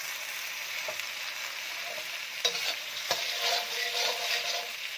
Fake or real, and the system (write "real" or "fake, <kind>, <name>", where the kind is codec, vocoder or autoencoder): real